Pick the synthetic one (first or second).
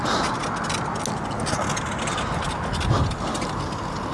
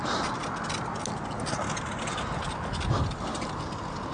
second